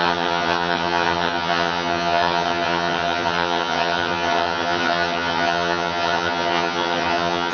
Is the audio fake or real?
fake